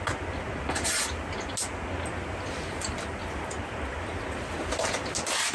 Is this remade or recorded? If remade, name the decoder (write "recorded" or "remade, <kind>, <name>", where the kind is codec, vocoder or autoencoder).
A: recorded